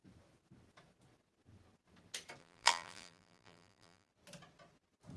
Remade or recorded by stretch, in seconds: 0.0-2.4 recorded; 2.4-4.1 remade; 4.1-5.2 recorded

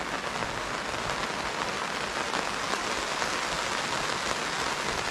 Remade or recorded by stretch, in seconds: 0.0-5.1 recorded

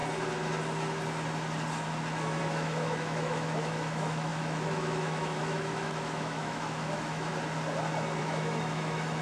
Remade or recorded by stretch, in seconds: 0.0-2.4 recorded; 2.4-7.3 remade; 7.3-8.2 recorded; 8.2-9.2 remade

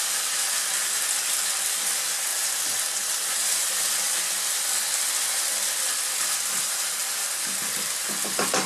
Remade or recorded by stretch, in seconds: 0.0-8.7 recorded

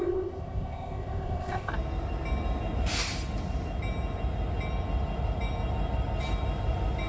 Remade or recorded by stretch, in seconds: 0.0-1.7 remade; 1.7-7.1 recorded

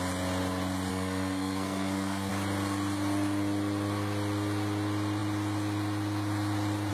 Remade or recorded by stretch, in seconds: 0.0-0.9 recorded; 0.9-2.3 remade; 2.3-6.9 recorded